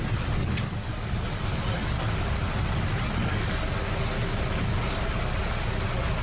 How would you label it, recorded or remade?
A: recorded